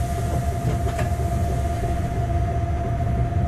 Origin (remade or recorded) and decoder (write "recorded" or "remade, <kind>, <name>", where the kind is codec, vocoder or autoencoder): recorded